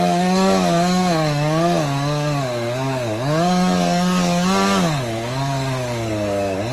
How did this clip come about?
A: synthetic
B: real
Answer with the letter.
A